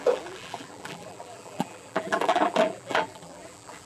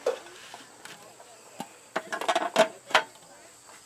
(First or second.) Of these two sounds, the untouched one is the second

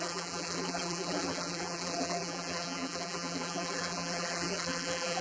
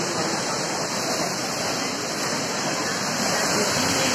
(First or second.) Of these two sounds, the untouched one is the second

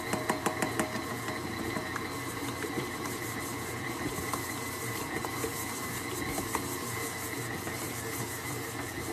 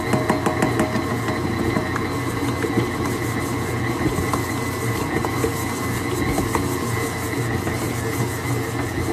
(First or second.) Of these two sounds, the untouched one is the second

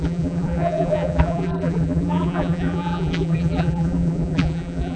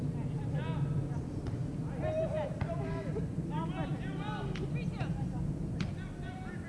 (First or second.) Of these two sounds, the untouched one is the second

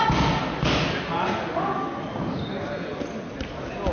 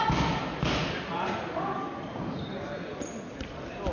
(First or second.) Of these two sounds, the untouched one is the first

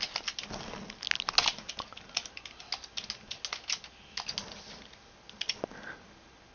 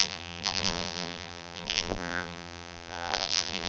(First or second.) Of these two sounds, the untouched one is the first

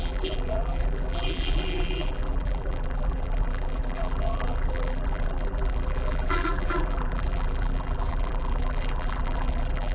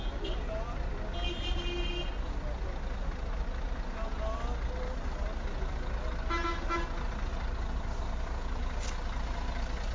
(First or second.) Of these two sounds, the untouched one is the second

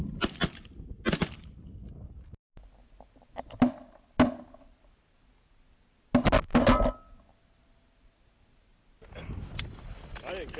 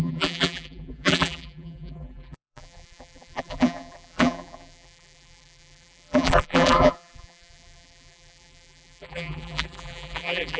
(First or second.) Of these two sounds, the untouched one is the first